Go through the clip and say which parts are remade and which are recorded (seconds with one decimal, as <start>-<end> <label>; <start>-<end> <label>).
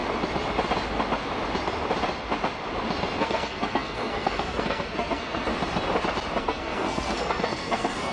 0.0-3.2 recorded; 3.2-5.5 remade; 5.5-6.4 recorded; 6.4-8.1 remade